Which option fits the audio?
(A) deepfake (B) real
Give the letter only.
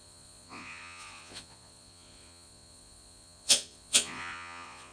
A